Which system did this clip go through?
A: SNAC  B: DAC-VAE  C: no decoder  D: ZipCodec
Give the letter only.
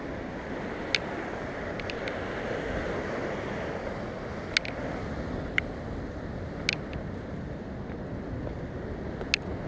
C